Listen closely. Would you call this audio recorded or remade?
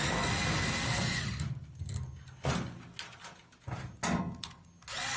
recorded